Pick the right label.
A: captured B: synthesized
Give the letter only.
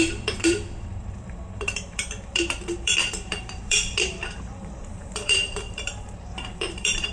B